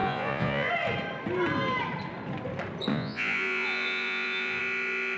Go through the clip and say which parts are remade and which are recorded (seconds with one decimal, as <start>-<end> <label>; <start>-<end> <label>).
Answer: 0.0-0.7 remade; 0.7-2.9 recorded; 2.9-4.6 remade; 4.6-5.2 recorded